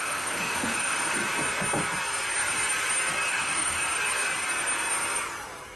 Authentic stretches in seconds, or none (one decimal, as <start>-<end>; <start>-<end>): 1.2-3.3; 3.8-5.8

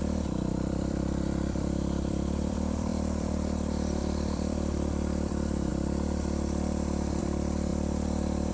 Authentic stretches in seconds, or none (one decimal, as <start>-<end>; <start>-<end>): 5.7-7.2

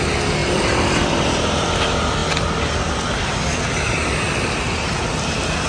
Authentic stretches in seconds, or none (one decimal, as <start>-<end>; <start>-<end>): 0.0-0.4; 1.3-5.7